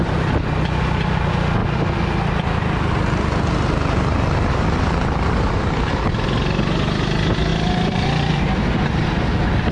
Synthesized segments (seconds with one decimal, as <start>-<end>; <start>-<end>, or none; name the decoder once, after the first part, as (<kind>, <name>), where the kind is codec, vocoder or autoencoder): 7.5-8.3 (vocoder, BigVGAN v2)